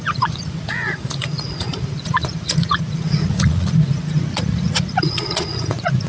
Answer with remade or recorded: remade